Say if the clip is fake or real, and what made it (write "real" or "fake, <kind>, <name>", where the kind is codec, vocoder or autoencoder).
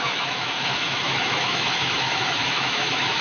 fake, autoencoder, DAC-VAE